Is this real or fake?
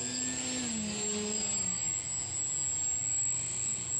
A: real